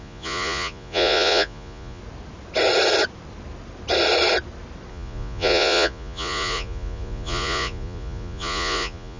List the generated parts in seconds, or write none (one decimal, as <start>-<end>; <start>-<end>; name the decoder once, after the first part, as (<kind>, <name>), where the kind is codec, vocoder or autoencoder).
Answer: 0.0-2.0 (vocoder, Vocos); 4.9-9.2